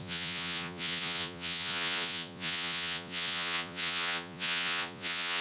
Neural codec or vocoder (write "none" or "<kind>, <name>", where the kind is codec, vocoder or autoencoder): vocoder, Vocos